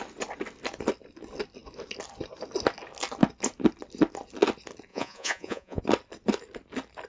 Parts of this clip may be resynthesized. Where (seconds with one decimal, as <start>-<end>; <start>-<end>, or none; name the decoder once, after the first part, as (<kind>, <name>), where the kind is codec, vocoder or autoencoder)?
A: 4.9-5.8 (vocoder, Vocos)